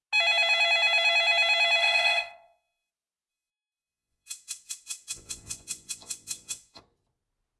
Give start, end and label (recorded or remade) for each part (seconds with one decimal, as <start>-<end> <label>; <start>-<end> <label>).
0.0-1.8 recorded; 1.8-2.9 remade; 2.9-3.3 recorded; 3.3-6.8 remade; 6.8-7.6 recorded